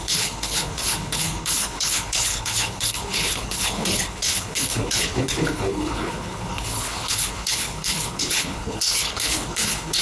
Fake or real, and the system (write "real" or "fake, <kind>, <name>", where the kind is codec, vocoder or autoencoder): fake, codec, HILCodec